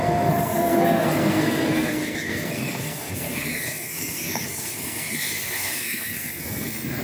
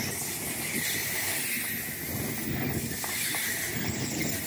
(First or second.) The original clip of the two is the second